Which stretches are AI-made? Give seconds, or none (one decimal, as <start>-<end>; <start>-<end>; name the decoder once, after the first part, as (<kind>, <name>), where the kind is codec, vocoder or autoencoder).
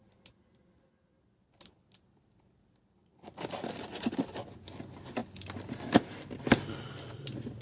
none